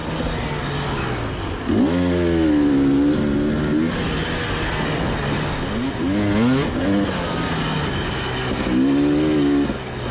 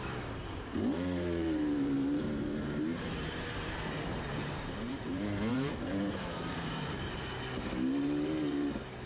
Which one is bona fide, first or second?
first